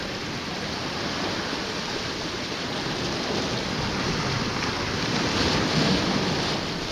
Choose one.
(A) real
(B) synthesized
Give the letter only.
A